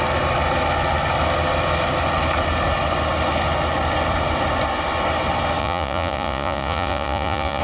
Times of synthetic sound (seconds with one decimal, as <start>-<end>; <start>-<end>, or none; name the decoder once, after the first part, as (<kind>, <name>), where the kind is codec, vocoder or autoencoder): 5.6-7.6 (vocoder, Vocos)